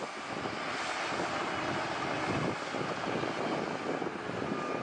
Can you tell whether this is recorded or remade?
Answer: recorded